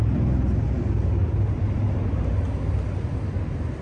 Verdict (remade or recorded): recorded